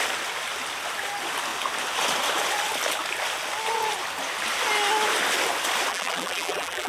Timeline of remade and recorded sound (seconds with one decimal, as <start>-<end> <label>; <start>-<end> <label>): 0.0-5.9 recorded; 5.9-6.9 remade